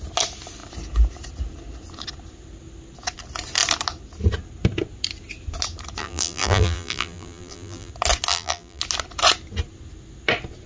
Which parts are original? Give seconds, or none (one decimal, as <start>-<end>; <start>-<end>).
0.0-6.0; 7.9-8.3; 8.8-10.7

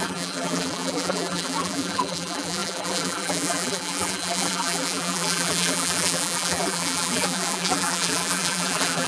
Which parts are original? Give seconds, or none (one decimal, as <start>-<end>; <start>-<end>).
none

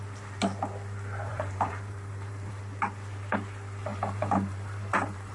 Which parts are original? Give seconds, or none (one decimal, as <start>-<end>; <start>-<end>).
0.0-1.3; 2.6-3.9